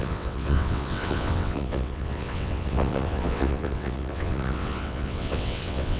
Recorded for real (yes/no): no